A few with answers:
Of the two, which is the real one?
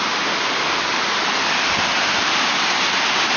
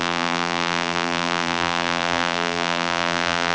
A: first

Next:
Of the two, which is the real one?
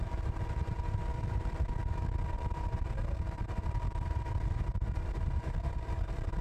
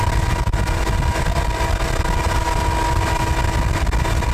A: second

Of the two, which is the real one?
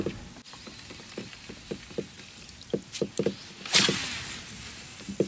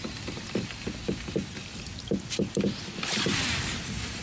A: first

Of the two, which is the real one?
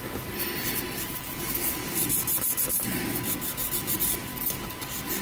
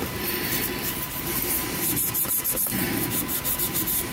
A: first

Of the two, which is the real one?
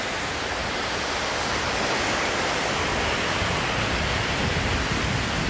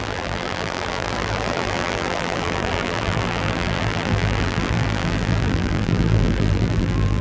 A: first